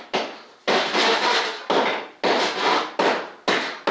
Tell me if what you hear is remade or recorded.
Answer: recorded